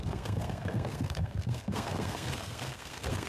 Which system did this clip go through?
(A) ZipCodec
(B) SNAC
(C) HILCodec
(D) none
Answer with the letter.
B